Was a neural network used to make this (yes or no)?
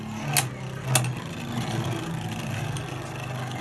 no